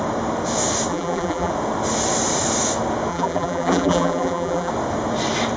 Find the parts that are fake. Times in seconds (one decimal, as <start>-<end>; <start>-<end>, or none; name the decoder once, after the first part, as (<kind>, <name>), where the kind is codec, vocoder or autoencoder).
0.9-1.5 (vocoder, BigVGAN v2); 3.1-4.7